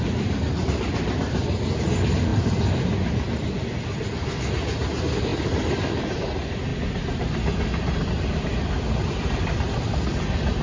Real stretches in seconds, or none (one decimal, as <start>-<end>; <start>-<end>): 0.0-10.6

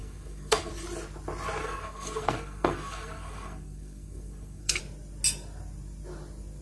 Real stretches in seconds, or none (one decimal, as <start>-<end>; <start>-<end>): 0.7-1.6; 4.8-6.6